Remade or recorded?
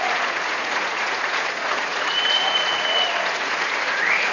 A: remade